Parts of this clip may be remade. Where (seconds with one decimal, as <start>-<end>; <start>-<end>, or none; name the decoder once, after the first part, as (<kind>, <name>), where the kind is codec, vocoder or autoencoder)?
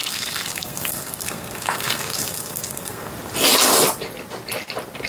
0.0-3.1 (codec, SNAC)